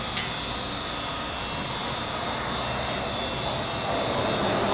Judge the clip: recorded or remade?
recorded